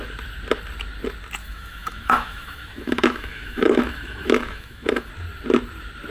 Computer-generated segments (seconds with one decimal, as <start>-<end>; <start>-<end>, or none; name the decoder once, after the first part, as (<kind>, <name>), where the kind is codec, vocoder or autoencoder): 1.4-5.1 (autoencoder, DAC-VAE)